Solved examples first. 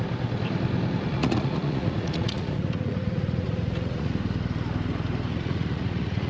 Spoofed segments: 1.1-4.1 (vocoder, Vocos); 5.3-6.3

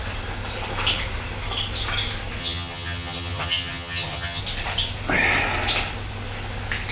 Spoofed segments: 2.4-4.4 (vocoder, HiFi-GAN)

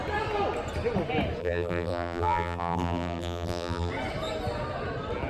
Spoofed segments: 1.4-3.9 (vocoder, BigVGAN v2)

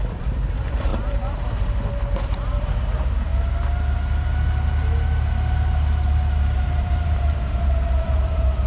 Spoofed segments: 0.0-3.3 (vocoder, BigVGAN v2); 6.4-8.7